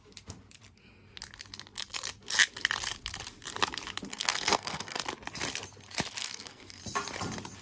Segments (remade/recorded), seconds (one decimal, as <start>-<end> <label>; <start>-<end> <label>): 0.0-4.1 recorded; 4.1-5.0 remade; 5.0-6.2 recorded; 6.2-6.8 remade; 6.8-7.6 recorded